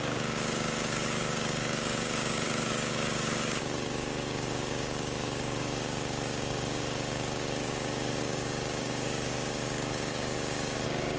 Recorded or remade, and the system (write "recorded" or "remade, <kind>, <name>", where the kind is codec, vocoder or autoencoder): remade, codec, DAC